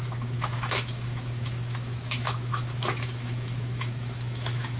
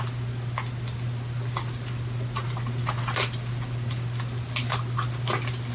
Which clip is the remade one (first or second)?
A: first